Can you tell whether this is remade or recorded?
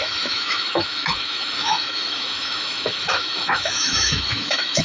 remade